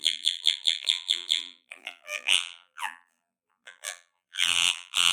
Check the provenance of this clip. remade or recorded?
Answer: remade